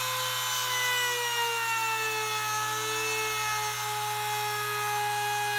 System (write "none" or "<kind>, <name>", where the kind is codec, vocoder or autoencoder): none